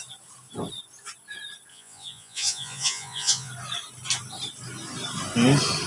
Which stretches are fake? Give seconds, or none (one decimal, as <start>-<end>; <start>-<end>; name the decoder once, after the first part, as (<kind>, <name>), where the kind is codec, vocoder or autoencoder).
1.7-3.5 (vocoder, Vocos)